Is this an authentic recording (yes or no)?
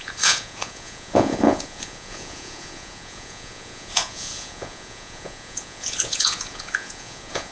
no